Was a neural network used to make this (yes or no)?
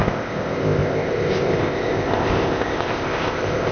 yes